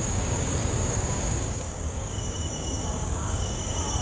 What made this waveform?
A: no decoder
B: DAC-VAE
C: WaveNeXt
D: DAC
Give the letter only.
D